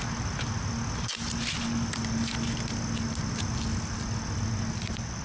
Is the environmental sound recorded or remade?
recorded